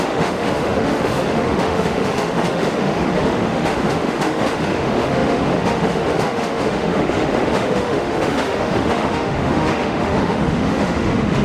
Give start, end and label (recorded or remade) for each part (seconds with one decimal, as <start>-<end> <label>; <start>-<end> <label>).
0.0-11.4 remade